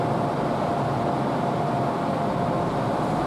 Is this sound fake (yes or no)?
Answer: no